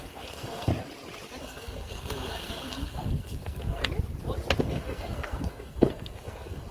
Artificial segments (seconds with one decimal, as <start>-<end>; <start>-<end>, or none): 0.0-0.7; 1.4-3.8; 4.6-6.7